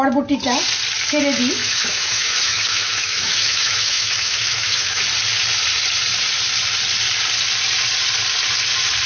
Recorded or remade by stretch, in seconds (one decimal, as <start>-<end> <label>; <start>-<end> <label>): 0.0-1.6 recorded; 1.6-5.0 remade; 5.0-9.1 recorded